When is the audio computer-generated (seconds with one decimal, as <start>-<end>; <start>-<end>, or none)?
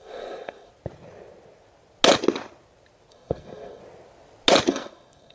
0.0-0.7; 3.1-3.8; 4.7-5.3